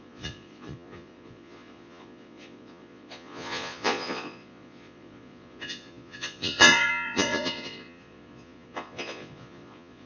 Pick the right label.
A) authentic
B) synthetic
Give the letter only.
B